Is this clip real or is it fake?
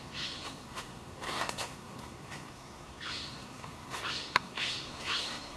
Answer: fake